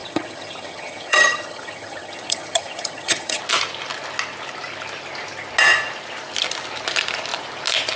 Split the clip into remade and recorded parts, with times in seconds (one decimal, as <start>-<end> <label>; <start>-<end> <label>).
0.0-3.4 remade; 3.4-8.0 recorded